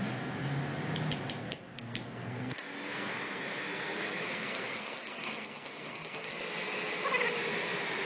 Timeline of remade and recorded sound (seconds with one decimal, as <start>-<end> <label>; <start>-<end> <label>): 0.0-1.4 recorded; 1.4-6.3 remade; 6.3-8.1 recorded